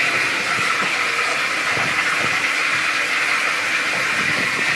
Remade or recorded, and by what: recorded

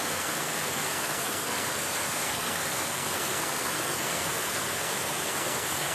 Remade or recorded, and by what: remade, codec, SNAC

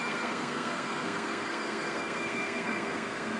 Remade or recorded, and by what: remade, codec, SNAC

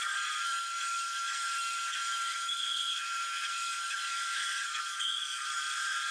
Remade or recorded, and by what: remade, codec, SNAC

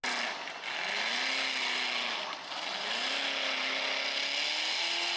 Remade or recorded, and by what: recorded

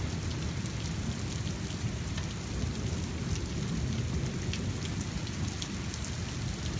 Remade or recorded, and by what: recorded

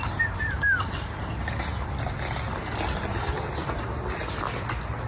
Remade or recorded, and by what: recorded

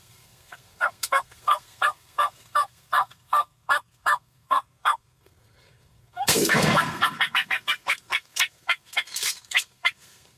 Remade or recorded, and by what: remade, codec, SNAC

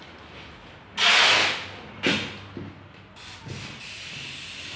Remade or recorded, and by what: recorded